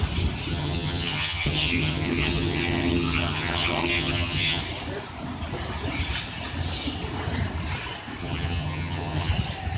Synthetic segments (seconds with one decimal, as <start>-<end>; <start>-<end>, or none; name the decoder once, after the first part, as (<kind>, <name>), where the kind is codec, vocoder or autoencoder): 0.5-4.6 (vocoder, HiFi-GAN); 8.2-9.3